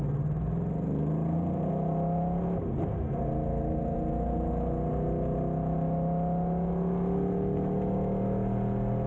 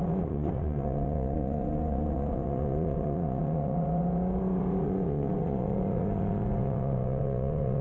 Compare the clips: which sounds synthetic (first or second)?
second